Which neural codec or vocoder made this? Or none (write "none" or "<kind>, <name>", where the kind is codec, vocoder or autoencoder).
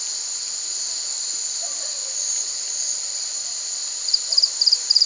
none